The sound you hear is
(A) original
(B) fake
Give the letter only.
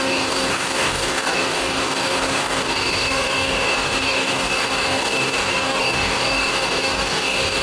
B